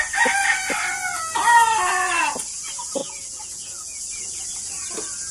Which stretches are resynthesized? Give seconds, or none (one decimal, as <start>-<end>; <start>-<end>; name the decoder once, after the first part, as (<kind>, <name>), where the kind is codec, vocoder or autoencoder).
3.0-4.0 (vocoder, Vocos)